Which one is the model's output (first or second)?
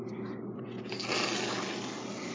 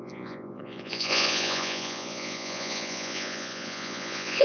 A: second